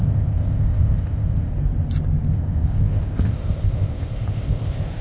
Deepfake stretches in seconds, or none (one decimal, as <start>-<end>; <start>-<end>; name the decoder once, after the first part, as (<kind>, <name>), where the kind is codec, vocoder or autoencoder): 0.0-1.5 (codec, ZipCodec); 2.3-5.0